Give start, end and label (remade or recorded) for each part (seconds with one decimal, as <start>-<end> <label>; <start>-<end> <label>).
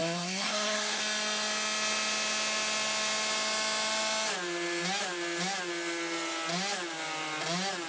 0.0-1.0 remade; 1.0-7.9 recorded